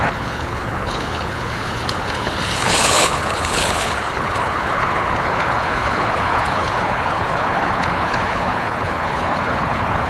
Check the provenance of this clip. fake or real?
fake